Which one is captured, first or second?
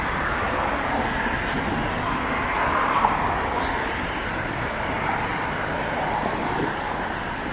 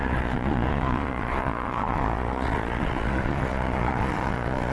first